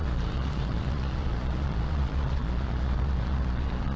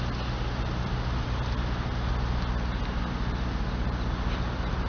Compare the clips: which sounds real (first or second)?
second